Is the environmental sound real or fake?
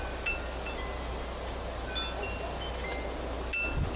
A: real